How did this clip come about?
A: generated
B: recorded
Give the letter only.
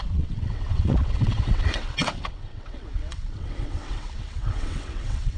A